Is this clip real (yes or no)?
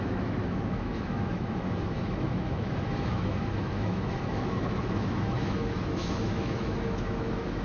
no